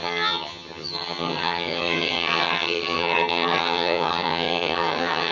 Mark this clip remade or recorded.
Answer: remade